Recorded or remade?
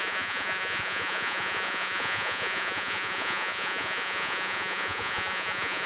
remade